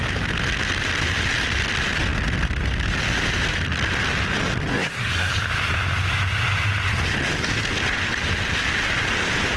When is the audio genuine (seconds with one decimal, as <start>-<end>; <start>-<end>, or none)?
0.0-4.7; 5.3-9.6